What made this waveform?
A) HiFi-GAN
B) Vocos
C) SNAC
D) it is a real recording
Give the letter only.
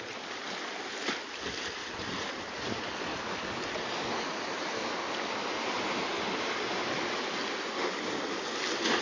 D